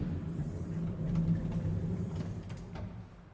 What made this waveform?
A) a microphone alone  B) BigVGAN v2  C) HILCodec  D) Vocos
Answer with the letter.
B